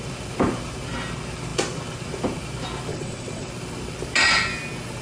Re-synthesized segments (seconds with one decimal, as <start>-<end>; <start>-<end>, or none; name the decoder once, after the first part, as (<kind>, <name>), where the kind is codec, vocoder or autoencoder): 2.9-3.5 (vocoder, WaveNeXt)